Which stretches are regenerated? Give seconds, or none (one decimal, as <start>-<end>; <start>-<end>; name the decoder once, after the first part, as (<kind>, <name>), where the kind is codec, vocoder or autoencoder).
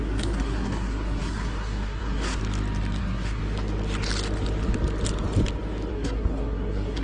0.0-2.4 (codec, SNAC); 3.0-3.4; 5.9-7.0